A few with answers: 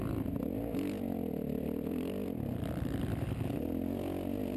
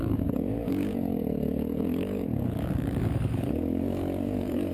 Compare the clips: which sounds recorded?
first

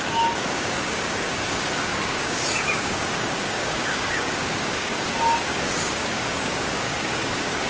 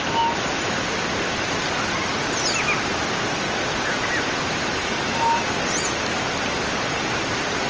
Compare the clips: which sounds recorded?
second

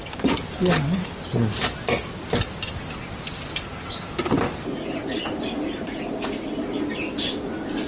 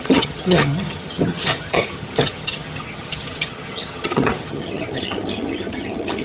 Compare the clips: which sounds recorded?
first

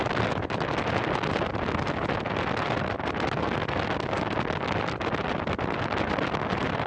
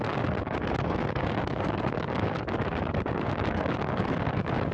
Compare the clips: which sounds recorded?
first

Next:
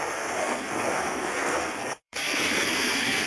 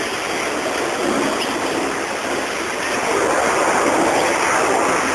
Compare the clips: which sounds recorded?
second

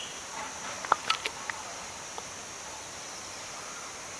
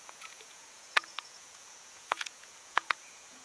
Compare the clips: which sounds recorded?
first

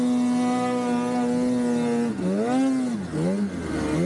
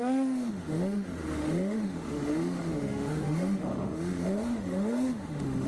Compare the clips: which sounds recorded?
first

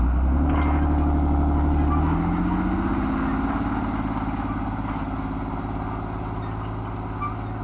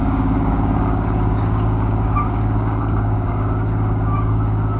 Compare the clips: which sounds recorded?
first